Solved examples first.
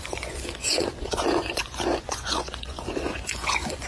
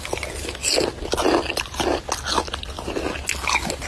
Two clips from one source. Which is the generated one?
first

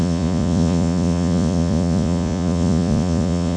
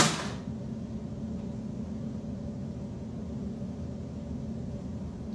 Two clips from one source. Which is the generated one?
first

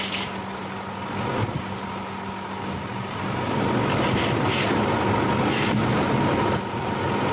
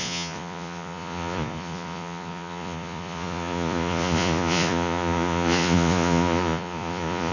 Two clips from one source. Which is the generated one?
second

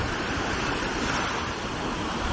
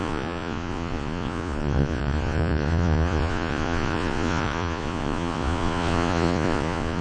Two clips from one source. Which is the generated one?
second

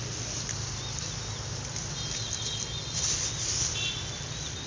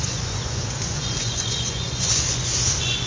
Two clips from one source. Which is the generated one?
second